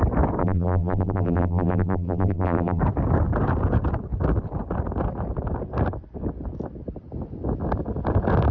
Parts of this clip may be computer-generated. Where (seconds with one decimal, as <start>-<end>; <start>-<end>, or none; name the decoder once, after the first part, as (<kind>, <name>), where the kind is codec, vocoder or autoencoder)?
0.4-2.8 (vocoder, BigVGAN v2)